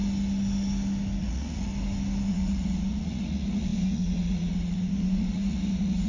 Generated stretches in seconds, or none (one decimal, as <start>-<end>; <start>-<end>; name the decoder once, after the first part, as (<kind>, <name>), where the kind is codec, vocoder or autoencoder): 1.2-1.7 (vocoder, Vocos); 2.3-6.1